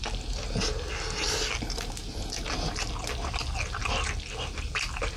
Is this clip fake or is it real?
real